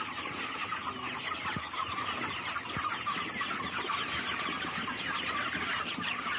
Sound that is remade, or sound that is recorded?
recorded